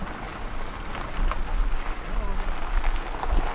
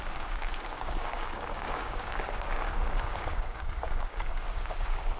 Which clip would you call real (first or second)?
first